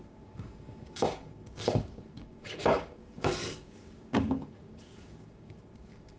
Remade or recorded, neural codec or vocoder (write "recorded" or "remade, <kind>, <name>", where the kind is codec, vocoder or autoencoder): remade, codec, DAC